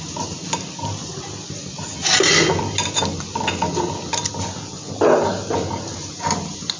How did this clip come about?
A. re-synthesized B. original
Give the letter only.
B